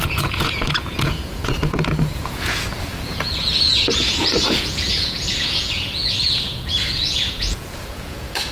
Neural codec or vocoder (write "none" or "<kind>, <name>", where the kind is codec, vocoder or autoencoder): vocoder, Vocos